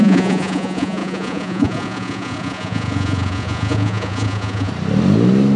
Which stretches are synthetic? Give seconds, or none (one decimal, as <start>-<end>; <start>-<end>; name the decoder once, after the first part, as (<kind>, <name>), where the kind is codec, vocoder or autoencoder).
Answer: 0.0-4.7 (vocoder, Vocos)